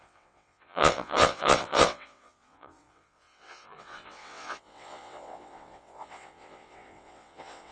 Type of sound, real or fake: fake